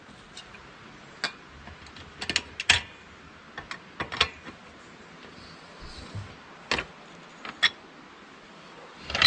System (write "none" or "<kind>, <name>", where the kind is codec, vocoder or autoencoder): none